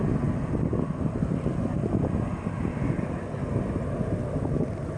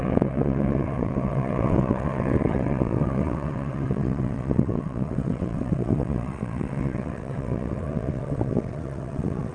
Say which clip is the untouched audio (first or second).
first